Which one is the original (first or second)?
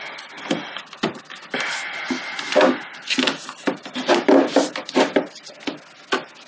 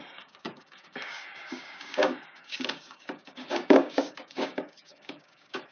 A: first